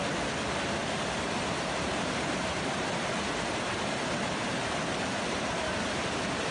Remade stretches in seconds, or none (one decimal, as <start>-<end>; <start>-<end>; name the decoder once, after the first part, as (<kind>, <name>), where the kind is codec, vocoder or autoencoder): 0.8-4.7 (vocoder, BigVGAN v2)